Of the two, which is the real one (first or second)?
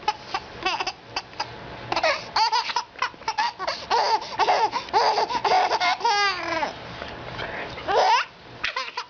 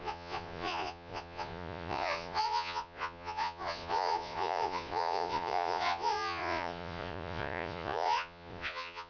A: first